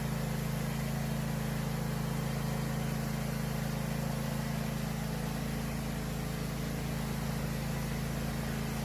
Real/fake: real